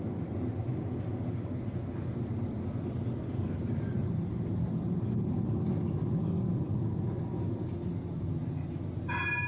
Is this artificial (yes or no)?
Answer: no